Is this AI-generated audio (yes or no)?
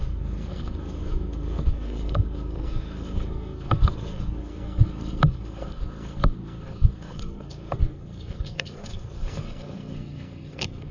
yes